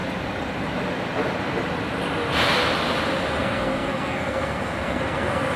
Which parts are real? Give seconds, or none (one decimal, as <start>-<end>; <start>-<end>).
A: 0.0-3.4